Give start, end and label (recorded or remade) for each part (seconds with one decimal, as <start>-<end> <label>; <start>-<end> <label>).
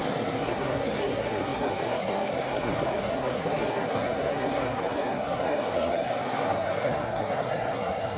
0.0-8.2 remade